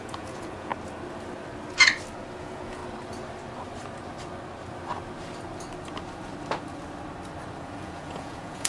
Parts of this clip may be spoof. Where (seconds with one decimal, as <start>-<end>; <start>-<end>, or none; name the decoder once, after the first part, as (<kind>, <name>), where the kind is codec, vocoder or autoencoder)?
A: 0.0-0.7 (vocoder, Vocos); 2.4-2.8; 7.6-8.7